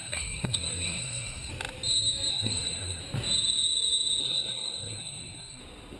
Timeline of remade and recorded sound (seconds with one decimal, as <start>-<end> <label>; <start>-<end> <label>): 0.0-1.5 remade; 1.5-2.3 recorded; 2.3-3.0 remade; 3.0-4.2 recorded; 4.2-5.6 remade; 5.6-6.0 recorded